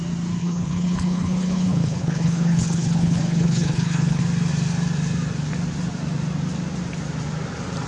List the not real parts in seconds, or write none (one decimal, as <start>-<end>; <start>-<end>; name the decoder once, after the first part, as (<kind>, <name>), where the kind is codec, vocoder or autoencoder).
0.4-4.2 (codec, HILCodec)